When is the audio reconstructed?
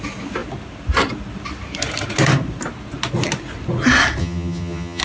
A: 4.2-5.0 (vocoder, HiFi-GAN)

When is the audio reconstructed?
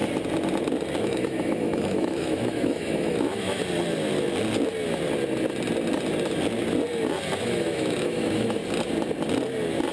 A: 1.0-3.6 (autoencoder, DAC-VAE); 7.4-8.6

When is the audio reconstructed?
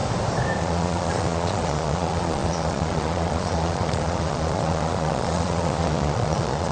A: 0.6-6.7 (vocoder, Vocos)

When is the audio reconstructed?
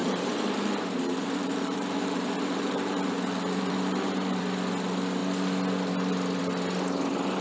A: 0.0-4.4 (vocoder, BigVGAN v2)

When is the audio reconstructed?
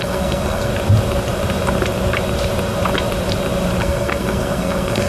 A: 0.0-0.7 (codec, SNAC); 3.8-5.1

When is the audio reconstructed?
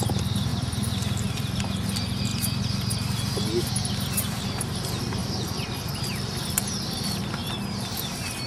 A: 0.5-1.6 (vocoder, BigVGAN v2); 5.2-8.5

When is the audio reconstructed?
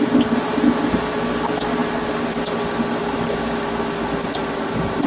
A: none